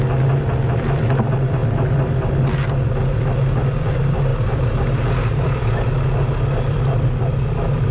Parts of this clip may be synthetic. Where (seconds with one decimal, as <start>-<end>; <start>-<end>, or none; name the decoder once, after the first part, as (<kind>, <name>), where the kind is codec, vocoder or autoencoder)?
none